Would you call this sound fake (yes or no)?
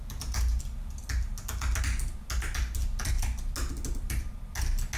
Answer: no